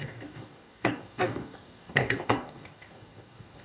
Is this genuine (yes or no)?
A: no